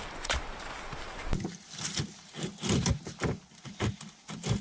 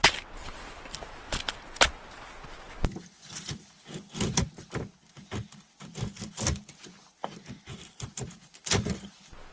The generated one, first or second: first